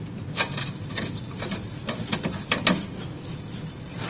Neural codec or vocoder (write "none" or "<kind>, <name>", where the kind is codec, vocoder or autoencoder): vocoder, BigVGAN v2